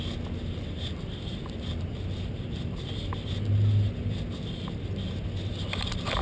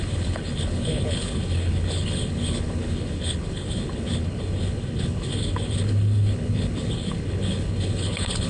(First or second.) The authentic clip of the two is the first